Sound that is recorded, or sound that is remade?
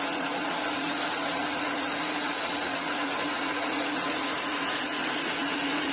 remade